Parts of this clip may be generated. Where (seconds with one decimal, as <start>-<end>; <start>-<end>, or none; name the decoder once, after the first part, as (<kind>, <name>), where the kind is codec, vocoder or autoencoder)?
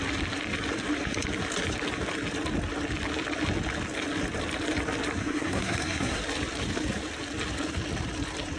5.2-6.2 (codec, SNAC)